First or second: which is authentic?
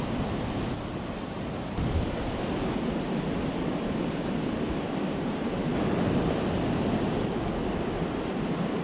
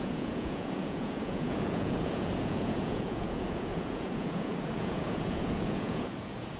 first